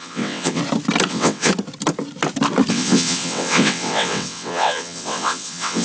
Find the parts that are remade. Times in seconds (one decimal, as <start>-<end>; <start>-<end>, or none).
0.0-0.6; 1.1-1.5; 2.7-5.8